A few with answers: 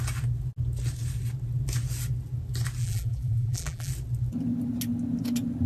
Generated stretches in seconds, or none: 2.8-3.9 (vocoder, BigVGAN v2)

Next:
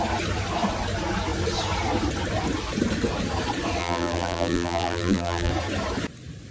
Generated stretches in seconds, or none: 3.8-5.5 (vocoder, BigVGAN v2)

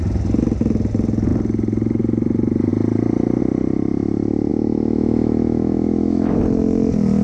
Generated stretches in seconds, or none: 4.5-6.4 (autoencoder, DAC-VAE)